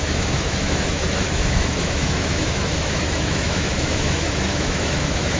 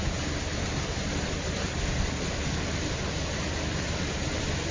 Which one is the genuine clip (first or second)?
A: second